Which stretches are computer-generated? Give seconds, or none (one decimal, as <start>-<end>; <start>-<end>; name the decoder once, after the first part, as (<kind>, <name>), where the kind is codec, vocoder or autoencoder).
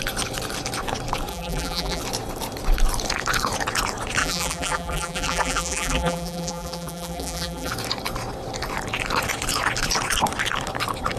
1.3-2.0 (vocoder, BigVGAN v2); 4.2-7.7